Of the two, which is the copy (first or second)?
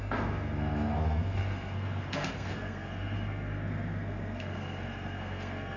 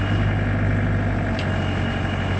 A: first